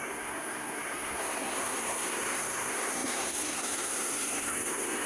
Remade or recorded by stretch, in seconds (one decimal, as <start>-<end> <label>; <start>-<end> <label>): 0.0-5.1 remade